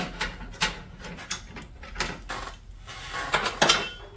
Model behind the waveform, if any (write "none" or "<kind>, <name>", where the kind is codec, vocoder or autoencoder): none